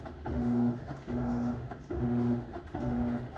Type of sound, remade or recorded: remade